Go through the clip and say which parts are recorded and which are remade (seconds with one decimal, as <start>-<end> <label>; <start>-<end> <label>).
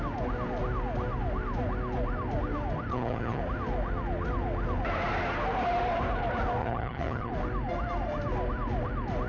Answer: 0.0-2.9 recorded; 2.9-3.4 remade; 3.4-6.6 recorded; 6.6-7.3 remade; 7.3-9.3 recorded